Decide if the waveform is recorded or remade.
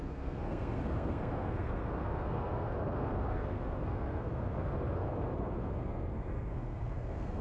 remade